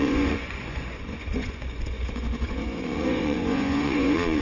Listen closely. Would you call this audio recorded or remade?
remade